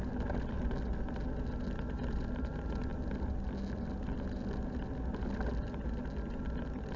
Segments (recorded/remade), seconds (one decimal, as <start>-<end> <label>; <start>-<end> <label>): 0.0-7.0 recorded